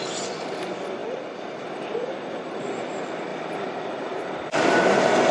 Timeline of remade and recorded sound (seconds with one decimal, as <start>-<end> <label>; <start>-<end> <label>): 0.0-1.0 recorded; 1.0-1.7 remade; 1.7-3.3 recorded; 3.3-5.3 remade